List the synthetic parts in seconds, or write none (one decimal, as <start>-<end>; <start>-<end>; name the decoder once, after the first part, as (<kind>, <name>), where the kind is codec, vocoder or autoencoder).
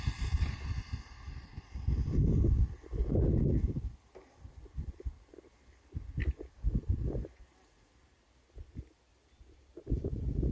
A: 0.0-3.0 (vocoder, BigVGAN v2); 4.9-10.5